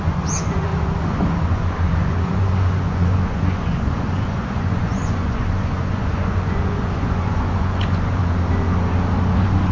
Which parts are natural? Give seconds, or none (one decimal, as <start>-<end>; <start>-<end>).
8.2-9.7

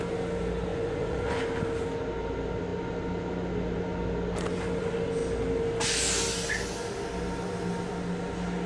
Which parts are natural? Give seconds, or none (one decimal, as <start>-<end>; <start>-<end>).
0.0-0.7; 1.4-8.7

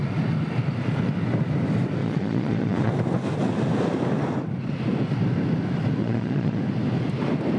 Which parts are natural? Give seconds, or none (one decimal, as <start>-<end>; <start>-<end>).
0.0-2.0; 2.9-6.0; 6.6-7.6

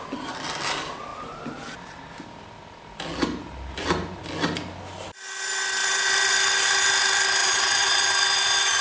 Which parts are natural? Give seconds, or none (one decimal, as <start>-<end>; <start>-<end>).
0.0-7.4; 8.1-8.8

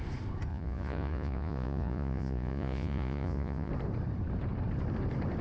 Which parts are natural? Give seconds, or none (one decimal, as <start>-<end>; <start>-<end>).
0.0-0.5; 3.7-5.4